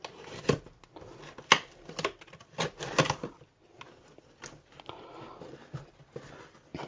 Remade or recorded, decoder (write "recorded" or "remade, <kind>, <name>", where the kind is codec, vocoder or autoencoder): recorded